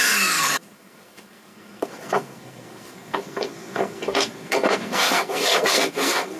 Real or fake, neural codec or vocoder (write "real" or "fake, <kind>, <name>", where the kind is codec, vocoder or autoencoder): fake, codec, SNAC